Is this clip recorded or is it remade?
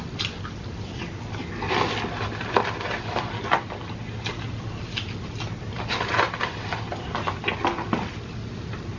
recorded